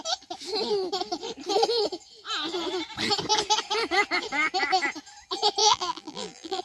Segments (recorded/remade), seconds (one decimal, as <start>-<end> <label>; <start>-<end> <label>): 0.0-5.6 recorded; 5.6-6.6 remade